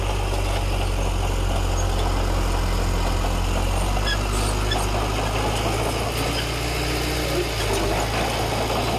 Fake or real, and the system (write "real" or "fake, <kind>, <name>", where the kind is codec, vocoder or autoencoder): real